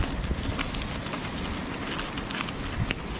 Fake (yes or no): no